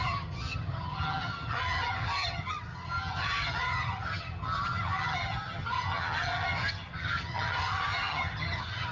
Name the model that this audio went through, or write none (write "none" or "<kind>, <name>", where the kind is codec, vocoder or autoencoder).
vocoder, HiFi-GAN